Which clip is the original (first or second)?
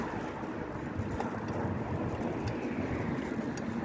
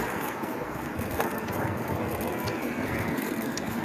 first